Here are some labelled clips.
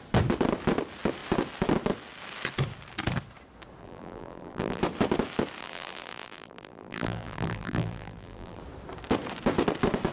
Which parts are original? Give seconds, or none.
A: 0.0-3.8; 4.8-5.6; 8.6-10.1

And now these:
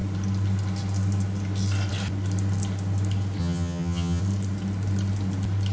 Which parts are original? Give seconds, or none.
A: 0.0-3.4; 4.2-5.7

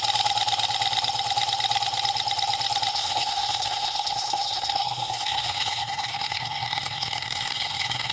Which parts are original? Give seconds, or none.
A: 0.0-2.9